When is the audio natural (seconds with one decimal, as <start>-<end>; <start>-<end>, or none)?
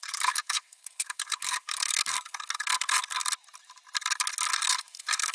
3.2-4.5